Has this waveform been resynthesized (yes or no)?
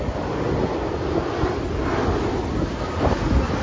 no